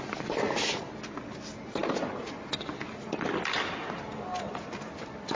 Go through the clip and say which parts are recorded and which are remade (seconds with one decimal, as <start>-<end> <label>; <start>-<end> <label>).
0.0-5.3 recorded